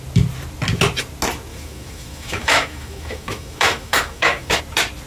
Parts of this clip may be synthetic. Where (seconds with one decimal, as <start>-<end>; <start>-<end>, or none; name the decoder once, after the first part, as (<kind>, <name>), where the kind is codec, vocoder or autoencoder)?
1.5-4.6 (autoencoder, DAC-VAE)